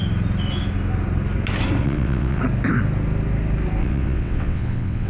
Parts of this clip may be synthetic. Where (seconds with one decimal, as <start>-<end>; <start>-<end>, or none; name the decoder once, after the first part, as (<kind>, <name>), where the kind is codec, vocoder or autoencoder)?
1.8-2.4 (vocoder, WaveNeXt); 3.8-5.1